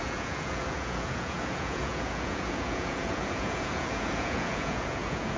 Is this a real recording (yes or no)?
no